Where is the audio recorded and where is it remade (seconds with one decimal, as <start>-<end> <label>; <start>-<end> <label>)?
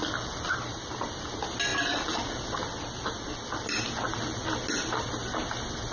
0.0-5.9 recorded